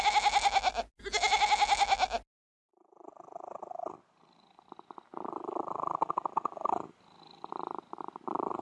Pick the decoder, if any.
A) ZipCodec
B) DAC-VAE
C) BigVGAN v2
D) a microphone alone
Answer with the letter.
D